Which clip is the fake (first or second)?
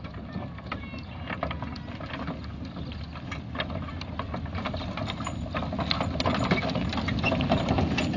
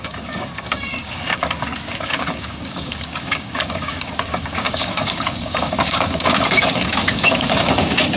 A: second